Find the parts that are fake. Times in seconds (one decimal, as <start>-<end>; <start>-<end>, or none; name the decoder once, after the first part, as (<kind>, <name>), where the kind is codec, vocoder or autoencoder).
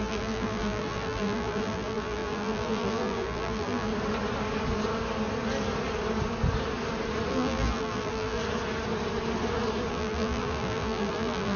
0.0-3.9 (vocoder, BigVGAN v2); 7.3-8.4; 9.9-11.6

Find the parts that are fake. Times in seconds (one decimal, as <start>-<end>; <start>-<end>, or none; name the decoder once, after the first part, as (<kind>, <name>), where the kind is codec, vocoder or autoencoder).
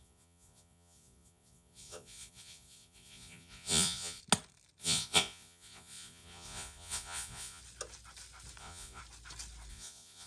0.0-4.2 (vocoder, Vocos); 4.8-7.6; 8.6-9.0; 9.7-10.3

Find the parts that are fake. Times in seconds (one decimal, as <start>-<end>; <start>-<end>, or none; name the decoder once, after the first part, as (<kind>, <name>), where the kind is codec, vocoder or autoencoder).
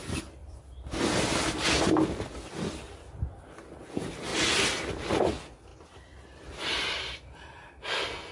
none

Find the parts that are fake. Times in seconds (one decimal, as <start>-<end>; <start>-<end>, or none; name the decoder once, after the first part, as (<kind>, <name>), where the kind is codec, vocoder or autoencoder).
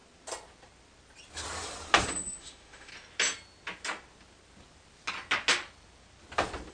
2.4-2.9 (autoencoder, DAC-VAE)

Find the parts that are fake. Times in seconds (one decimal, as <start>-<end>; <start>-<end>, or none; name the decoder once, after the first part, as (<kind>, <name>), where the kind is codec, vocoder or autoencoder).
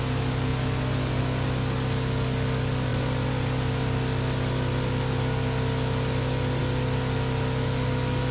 none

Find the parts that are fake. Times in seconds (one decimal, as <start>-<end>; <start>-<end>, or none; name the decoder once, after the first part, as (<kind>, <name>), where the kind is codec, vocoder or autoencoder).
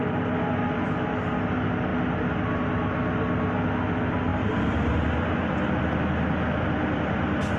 none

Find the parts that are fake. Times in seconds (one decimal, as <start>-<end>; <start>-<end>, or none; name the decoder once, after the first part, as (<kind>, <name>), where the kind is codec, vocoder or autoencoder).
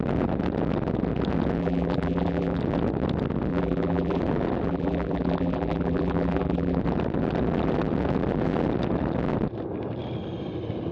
1.6-2.6 (vocoder, BigVGAN v2); 3.5-4.2; 4.7-6.8